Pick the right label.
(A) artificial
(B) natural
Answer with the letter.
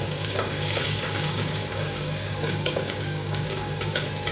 A